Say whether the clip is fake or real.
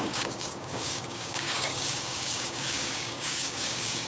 fake